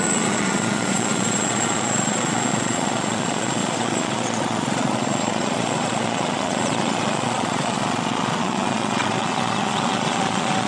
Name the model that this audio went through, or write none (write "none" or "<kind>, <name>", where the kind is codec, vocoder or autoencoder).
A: vocoder, Vocos